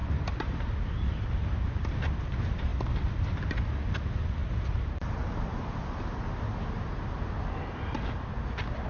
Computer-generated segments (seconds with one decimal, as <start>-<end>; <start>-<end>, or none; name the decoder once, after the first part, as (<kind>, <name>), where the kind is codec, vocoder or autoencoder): none